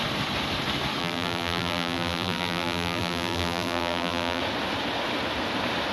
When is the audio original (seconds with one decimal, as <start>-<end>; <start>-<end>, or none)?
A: 0.0-1.0; 4.4-5.9